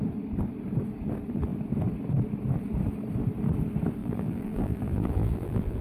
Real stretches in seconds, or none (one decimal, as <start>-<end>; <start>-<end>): 0.0-4.0